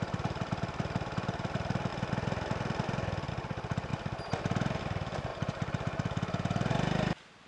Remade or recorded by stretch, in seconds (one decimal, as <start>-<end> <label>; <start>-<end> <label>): 0.0-3.9 remade; 3.9-4.8 recorded; 4.8-5.3 remade; 5.3-6.7 recorded; 6.7-7.5 remade